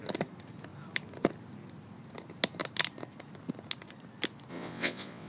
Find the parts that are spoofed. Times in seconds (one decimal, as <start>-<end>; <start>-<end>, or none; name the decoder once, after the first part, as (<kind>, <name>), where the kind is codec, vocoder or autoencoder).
4.5-5.3 (vocoder, WaveNeXt)